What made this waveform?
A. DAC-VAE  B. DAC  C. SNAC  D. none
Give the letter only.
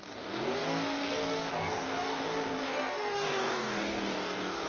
B